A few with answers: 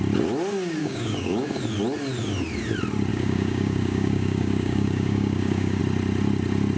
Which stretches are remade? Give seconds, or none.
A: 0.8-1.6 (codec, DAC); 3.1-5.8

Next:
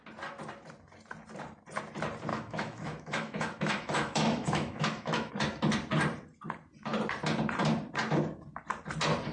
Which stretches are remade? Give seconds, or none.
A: 2.3-5.3 (autoencoder, DAC-VAE)

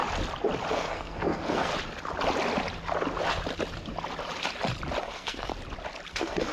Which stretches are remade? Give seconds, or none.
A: 0.7-1.7 (codec, SNAC); 5.0-5.5; 6.1-6.5

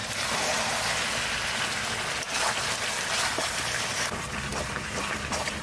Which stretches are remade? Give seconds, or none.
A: 4.5-5.6 (vocoder, BigVGAN v2)